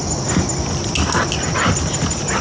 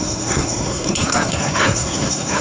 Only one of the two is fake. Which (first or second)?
second